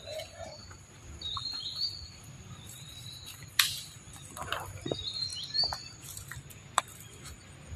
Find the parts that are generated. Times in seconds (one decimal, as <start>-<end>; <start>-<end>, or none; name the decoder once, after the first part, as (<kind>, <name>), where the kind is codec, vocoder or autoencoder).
0.6-2.9 (vocoder, BigVGAN v2); 5.3-6.8